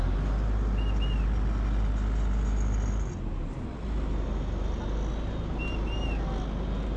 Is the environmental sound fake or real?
real